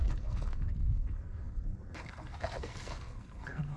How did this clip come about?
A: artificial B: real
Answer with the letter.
A